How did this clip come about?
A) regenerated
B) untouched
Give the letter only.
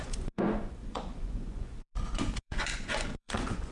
A